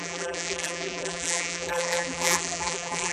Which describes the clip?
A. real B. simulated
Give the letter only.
B